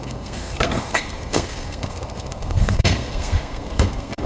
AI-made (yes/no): yes